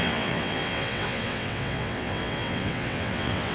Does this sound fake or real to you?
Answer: fake